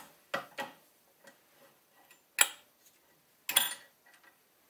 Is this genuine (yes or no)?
yes